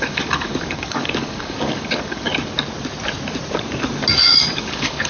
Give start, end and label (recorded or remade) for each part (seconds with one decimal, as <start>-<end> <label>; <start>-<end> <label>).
0.0-2.3 remade; 2.3-4.4 recorded; 4.4-5.1 remade